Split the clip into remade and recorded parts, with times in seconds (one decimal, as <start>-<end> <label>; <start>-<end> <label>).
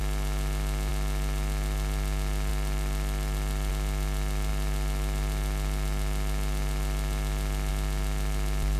0.0-2.5 recorded; 2.5-3.7 remade; 3.7-8.8 recorded